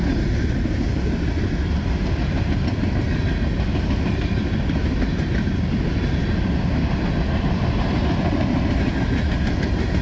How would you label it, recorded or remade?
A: recorded